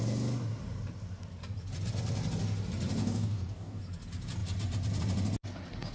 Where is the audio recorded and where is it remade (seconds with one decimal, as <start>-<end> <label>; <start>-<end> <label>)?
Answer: 0.0-3.0 recorded; 3.0-3.8 remade; 3.8-5.9 recorded